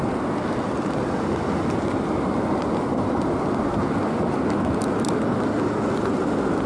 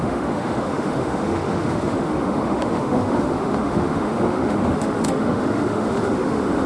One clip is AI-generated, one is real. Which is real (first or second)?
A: first